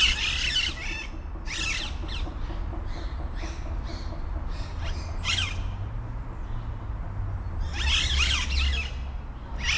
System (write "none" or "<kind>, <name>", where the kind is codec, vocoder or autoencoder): none